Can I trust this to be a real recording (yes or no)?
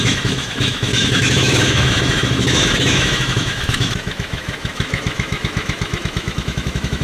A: no